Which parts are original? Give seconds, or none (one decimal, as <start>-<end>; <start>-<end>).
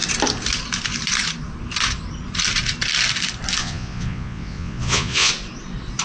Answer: 0.0-3.6; 5.3-6.0